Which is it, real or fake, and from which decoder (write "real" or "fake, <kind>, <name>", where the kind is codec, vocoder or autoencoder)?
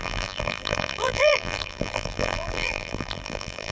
fake, vocoder, BigVGAN v2